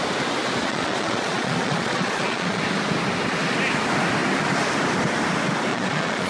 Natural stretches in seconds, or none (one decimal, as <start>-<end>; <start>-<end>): 0.0-0.6; 2.6-5.7